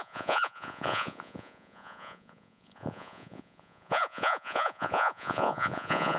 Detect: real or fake fake